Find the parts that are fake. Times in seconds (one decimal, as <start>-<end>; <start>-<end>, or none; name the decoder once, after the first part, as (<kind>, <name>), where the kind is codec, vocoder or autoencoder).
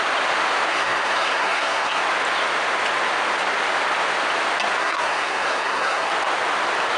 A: 0.7-2.0 (codec, SNAC); 4.8-6.1